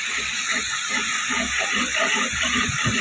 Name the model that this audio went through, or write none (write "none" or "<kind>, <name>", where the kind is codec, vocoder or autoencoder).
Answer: none